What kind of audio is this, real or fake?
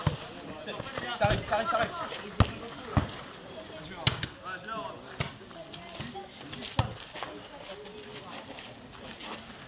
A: real